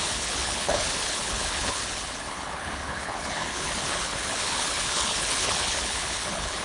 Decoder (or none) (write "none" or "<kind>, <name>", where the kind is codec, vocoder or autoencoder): codec, HILCodec